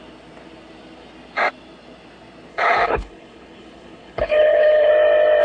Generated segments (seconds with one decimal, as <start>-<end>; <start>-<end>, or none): 2.5-4.9